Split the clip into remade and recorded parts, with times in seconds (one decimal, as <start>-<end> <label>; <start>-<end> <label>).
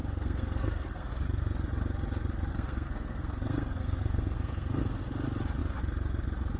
0.0-1.1 remade; 1.1-2.5 recorded; 2.5-5.0 remade; 5.0-6.6 recorded